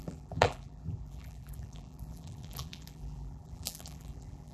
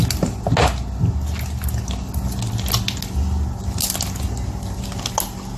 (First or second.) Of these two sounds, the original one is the second